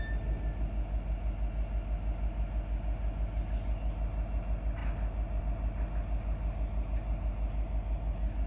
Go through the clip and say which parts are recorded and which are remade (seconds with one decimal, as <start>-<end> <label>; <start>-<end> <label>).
0.0-8.5 recorded

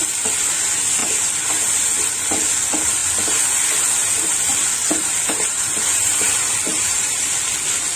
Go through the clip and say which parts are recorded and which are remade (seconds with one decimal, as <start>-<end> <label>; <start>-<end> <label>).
0.0-4.8 recorded; 4.8-6.2 remade; 6.2-6.7 recorded; 6.7-7.3 remade; 7.3-8.0 recorded

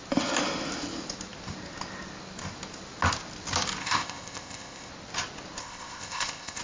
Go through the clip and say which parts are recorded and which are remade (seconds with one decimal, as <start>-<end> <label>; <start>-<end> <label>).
0.0-3.8 recorded; 3.8-4.9 remade; 4.9-5.6 recorded; 5.6-6.6 remade